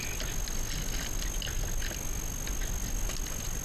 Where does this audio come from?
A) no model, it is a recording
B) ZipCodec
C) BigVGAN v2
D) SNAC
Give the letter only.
A